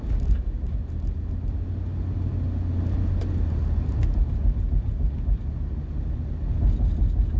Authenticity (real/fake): real